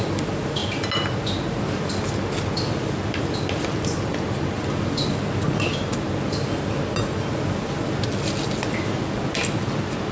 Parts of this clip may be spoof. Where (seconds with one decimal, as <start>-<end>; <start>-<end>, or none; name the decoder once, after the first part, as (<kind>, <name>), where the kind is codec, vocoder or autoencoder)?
none